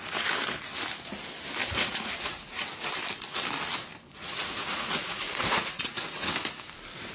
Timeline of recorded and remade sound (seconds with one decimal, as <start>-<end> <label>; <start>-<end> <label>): 0.0-1.6 recorded; 1.6-2.7 remade; 2.7-4.2 recorded; 4.2-6.3 remade; 6.3-7.1 recorded